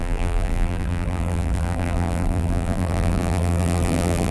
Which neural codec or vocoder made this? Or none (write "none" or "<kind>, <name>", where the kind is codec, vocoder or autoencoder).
vocoder, BigVGAN v2